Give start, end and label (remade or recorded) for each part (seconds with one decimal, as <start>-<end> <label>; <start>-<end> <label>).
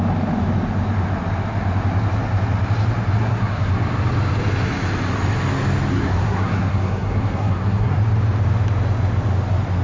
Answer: 0.0-3.2 recorded; 3.2-3.7 remade; 3.7-5.9 recorded; 5.9-8.0 remade; 8.0-9.8 recorded